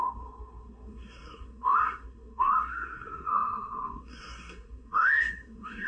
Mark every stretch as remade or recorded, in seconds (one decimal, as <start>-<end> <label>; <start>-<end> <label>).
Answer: 0.0-5.9 remade